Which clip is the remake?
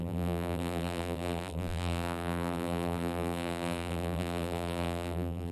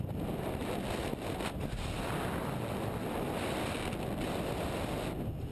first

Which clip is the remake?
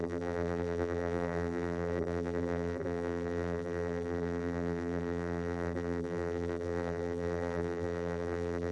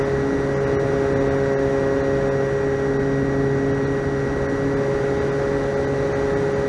first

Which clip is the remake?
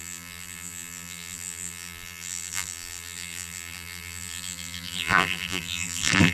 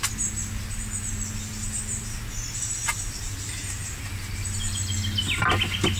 first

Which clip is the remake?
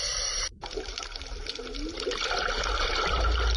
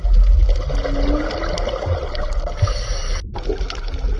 first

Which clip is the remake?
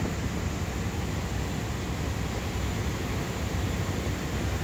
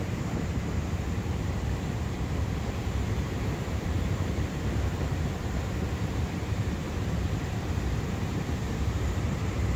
second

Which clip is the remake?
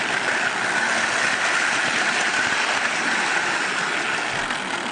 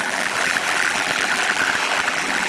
second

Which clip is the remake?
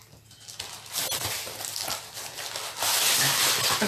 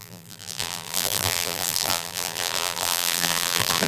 second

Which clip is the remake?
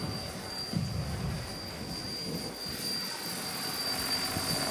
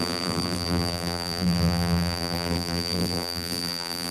second